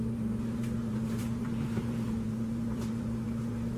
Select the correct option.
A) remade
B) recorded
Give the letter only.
A